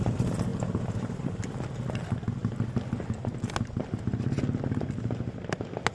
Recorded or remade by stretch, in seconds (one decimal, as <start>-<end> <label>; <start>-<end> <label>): 0.0-5.9 recorded